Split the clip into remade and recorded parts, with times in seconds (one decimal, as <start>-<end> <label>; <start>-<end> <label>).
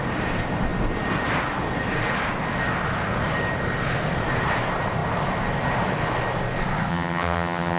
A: 0.0-6.9 recorded; 6.9-7.8 remade